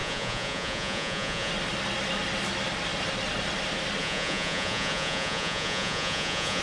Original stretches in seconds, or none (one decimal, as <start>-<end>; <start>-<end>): 1.5-4.0

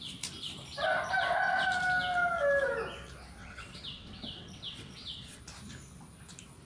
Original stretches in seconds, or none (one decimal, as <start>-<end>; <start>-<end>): 0.0-3.4; 5.4-6.7

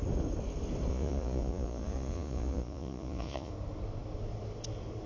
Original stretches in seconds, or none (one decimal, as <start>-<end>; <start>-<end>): 0.0-0.9; 3.5-5.1

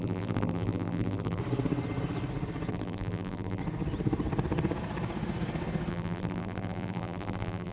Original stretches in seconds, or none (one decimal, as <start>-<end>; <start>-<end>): 1.4-2.7; 3.6-5.9

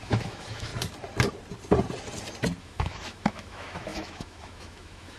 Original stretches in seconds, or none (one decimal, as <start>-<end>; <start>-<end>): 0.7-2.6